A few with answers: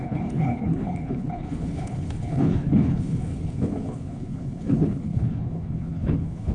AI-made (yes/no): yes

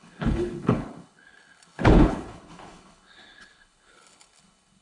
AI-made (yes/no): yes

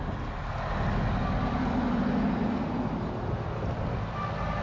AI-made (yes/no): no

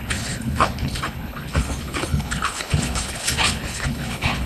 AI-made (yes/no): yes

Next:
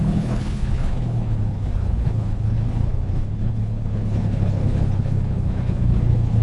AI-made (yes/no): yes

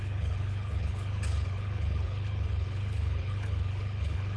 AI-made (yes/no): yes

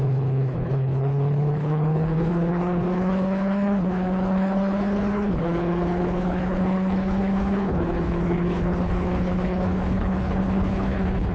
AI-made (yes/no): yes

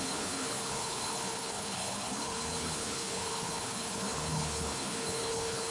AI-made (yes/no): yes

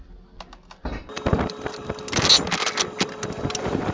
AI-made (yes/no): no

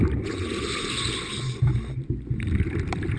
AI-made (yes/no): no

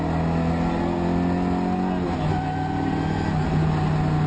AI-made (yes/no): no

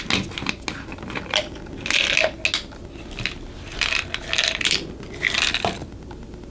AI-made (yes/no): no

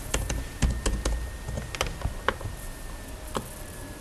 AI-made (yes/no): no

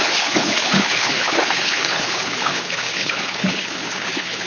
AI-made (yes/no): yes